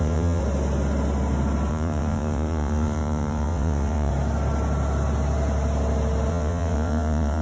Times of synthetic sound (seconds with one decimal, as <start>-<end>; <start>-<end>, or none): 0.0-0.4; 1.7-4.1; 6.3-7.4